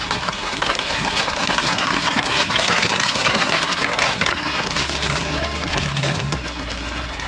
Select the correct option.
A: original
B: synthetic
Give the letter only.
B